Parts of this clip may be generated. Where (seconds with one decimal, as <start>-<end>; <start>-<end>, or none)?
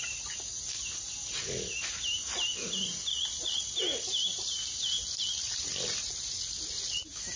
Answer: 3.1-3.6